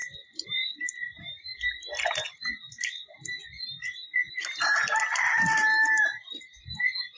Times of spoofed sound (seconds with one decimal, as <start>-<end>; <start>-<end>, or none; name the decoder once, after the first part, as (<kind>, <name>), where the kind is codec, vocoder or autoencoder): none